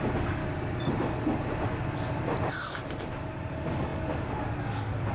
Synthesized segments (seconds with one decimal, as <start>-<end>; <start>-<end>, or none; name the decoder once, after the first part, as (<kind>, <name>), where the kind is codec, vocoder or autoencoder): 0.0-0.4 (codec, DAC); 3.3-5.1

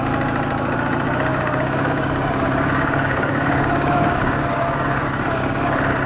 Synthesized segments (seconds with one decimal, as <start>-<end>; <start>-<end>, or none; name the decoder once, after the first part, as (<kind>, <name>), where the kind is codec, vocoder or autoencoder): 1.3-5.0 (codec, DAC)